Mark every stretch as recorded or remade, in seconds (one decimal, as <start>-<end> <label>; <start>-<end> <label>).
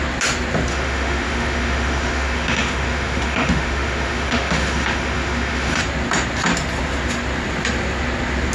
0.0-0.7 recorded; 0.7-5.8 remade; 5.8-8.5 recorded